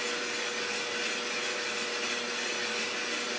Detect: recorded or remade recorded